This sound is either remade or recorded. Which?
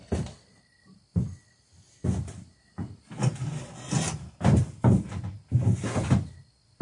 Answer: recorded